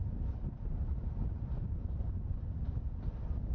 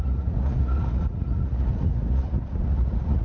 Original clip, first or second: first